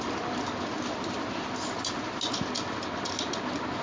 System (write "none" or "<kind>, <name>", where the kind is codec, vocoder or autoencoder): none